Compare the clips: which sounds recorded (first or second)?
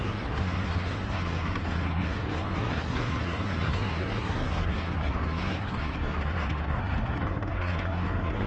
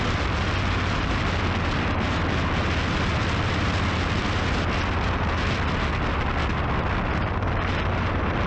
second